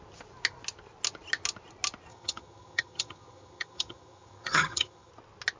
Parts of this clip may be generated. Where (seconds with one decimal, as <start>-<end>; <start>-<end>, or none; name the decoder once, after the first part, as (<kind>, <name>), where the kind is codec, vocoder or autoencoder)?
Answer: 2.1-5.1 (vocoder, HiFi-GAN)